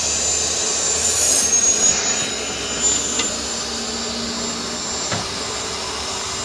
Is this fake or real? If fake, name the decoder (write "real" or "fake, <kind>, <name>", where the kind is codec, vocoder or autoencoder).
real